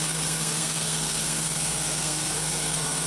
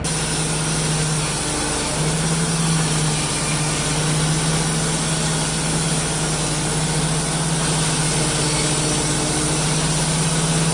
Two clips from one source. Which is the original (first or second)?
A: second